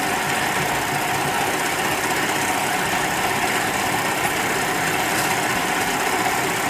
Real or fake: real